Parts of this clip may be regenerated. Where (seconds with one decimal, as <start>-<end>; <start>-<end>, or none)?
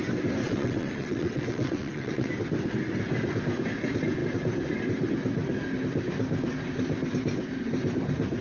0.4-2.3